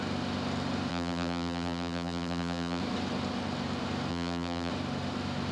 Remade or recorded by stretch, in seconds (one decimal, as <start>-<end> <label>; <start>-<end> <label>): 0.0-0.9 recorded; 0.9-2.8 remade; 2.8-4.1 recorded; 4.1-4.7 remade; 4.7-5.5 recorded